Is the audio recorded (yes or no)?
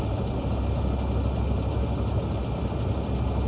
yes